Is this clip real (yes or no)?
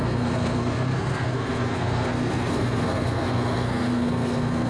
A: no